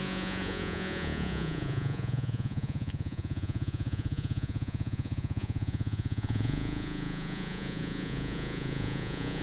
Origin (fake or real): fake